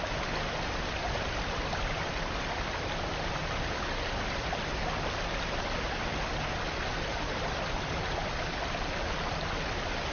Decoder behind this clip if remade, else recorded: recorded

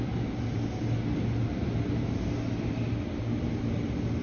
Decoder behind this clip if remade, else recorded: recorded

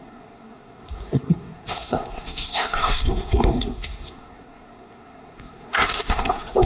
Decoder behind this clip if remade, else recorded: remade, codec, SNAC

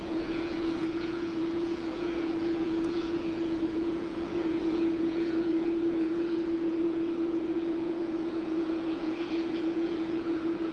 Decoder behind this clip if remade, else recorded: remade, vocoder, Vocos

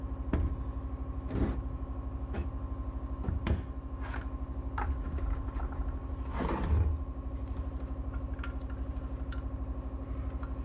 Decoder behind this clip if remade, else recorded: recorded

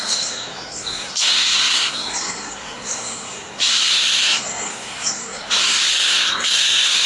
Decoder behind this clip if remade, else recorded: remade, codec, SNAC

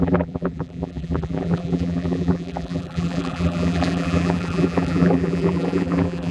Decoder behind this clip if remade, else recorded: remade, vocoder, BigVGAN v2